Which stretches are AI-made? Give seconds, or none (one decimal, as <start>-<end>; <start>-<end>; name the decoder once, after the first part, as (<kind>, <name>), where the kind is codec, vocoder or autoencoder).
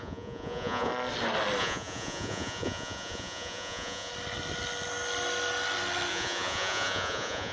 0.0-0.9 (vocoder, Vocos); 1.6-4.1; 6.1-7.5